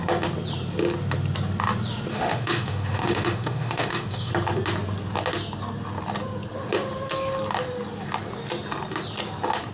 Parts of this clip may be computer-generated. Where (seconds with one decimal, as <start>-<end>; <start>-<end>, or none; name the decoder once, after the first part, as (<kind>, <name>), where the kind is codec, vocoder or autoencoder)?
2.1-4.3 (autoencoder, DAC-VAE)